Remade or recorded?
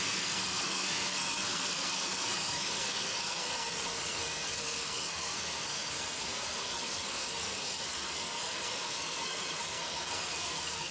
remade